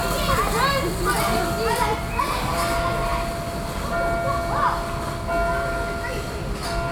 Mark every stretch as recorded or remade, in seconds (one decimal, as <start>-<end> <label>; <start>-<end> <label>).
0.0-6.9 recorded